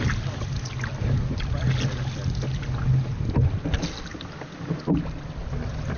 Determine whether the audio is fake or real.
real